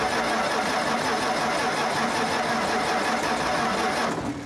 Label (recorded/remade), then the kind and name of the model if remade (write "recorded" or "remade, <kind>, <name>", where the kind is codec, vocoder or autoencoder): recorded